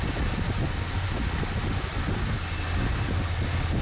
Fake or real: real